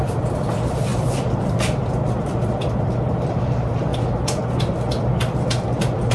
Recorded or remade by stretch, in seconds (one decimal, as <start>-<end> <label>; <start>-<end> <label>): 0.0-3.9 remade; 3.9-5.0 recorded; 5.0-6.1 remade